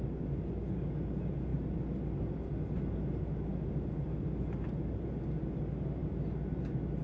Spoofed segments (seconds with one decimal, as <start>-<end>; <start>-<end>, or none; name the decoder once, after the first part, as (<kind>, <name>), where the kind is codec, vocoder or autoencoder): none